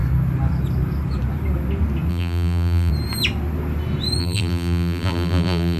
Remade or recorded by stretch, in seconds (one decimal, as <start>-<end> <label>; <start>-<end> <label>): 0.0-2.1 recorded; 2.1-2.9 remade; 2.9-4.2 recorded; 4.2-5.8 remade